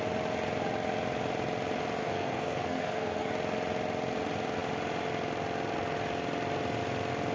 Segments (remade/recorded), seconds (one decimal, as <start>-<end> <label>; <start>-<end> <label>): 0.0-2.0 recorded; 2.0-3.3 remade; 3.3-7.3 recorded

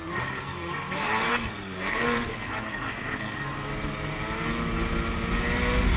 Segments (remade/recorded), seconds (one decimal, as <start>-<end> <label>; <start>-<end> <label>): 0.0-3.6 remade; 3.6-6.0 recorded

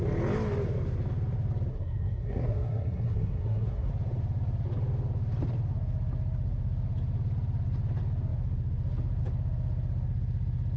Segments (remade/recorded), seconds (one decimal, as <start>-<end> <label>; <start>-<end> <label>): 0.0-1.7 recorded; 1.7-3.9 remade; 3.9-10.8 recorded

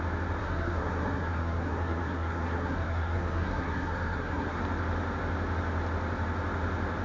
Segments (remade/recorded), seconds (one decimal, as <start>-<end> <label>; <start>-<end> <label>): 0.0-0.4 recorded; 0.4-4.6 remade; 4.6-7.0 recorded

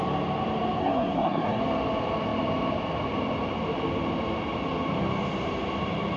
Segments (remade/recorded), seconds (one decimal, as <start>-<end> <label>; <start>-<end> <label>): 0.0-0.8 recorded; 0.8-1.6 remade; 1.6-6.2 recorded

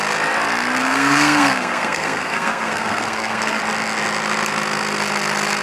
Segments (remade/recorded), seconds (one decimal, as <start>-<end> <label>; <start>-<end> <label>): 0.0-0.8 recorded; 0.8-3.6 remade; 3.6-5.6 recorded